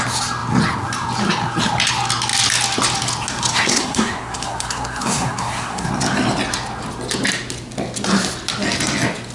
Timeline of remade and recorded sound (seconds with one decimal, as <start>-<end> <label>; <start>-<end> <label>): 0.0-3.5 recorded; 3.5-5.9 remade; 5.9-9.3 recorded